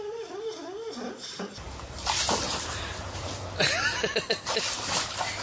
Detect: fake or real fake